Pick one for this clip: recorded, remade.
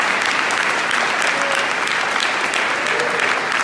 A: recorded